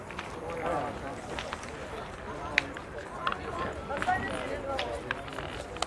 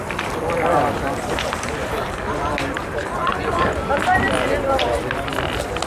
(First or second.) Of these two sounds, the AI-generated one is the second